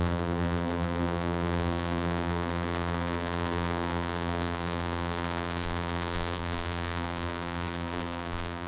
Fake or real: fake